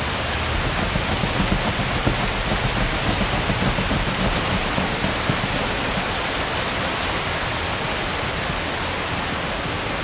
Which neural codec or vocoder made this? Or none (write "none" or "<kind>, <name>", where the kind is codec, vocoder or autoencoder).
none